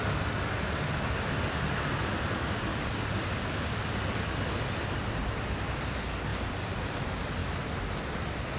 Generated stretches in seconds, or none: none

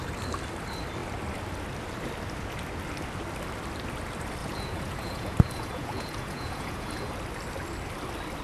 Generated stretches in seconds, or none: 4.4-7.1 (vocoder, Vocos)

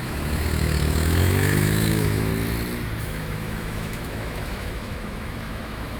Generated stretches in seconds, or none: 0.0-2.3 (autoencoder, DAC-VAE); 3.0-6.0

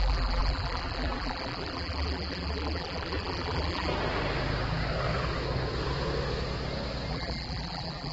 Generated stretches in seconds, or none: 0.0-3.9 (vocoder, BigVGAN v2); 7.1-8.1